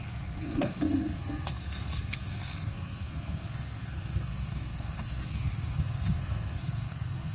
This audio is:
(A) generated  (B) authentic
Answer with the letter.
A